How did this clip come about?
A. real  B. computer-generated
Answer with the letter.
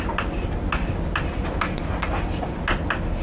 A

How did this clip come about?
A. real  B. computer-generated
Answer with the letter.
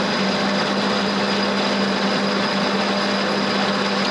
A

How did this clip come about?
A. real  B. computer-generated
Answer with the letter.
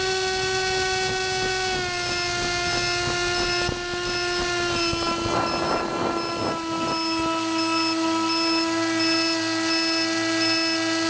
A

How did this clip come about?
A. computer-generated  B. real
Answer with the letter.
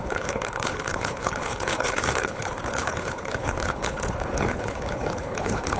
A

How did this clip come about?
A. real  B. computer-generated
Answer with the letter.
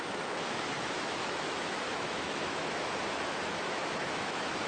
B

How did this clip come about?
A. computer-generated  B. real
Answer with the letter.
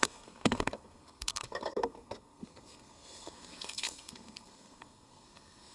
A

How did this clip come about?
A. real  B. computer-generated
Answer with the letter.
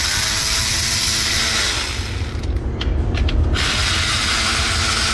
A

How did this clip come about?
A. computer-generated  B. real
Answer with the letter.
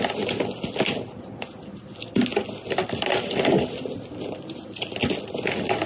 B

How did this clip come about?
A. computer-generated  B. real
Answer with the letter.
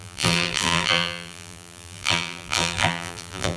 A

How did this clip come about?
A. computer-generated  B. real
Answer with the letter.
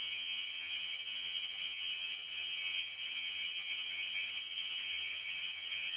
A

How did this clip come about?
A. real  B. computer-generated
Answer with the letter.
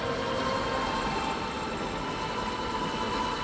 A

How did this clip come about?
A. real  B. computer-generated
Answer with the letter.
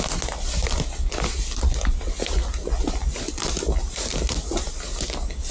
A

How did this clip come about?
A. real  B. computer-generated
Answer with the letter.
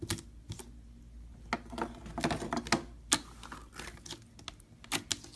A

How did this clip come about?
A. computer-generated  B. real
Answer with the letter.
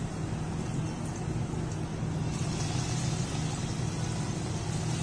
B